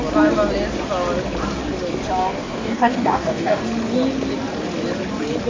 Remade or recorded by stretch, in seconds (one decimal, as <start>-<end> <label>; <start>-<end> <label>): 0.0-2.2 recorded; 2.2-3.6 remade; 3.6-5.5 recorded